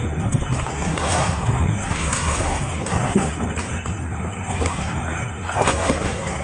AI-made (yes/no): yes